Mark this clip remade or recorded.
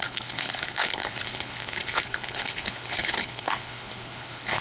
remade